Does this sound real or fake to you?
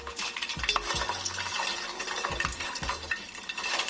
real